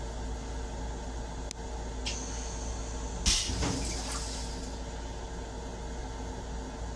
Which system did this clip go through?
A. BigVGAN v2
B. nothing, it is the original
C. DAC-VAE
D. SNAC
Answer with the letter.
B